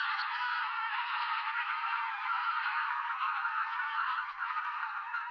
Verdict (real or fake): fake